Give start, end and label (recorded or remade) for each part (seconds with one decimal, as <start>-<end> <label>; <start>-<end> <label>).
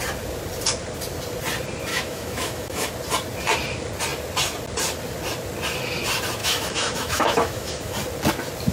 0.0-1.9 recorded; 1.9-2.9 remade; 2.9-6.4 recorded; 6.4-7.9 remade; 7.9-8.7 recorded